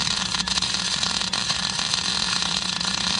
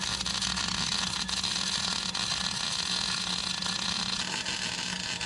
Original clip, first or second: second